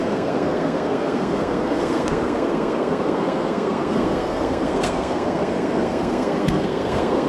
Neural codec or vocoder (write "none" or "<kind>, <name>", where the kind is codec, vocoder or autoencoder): codec, SNAC